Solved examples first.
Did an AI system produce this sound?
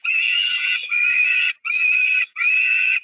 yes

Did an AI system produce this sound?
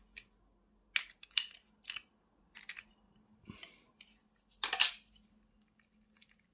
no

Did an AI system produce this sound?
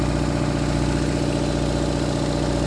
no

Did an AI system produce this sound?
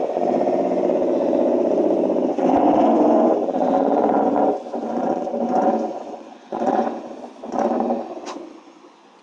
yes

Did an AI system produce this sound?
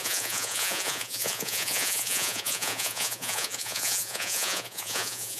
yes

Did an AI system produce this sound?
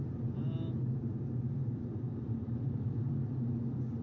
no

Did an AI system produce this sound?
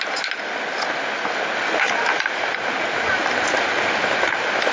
no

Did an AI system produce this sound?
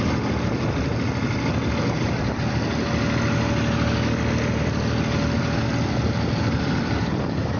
no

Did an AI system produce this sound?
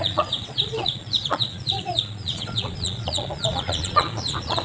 yes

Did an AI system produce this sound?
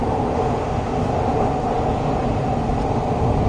no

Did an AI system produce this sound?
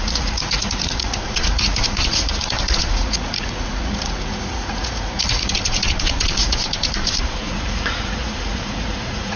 yes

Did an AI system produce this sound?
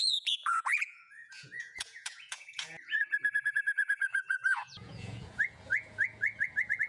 yes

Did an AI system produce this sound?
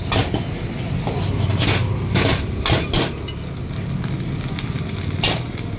no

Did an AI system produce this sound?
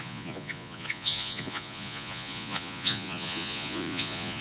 yes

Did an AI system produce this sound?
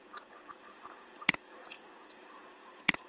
yes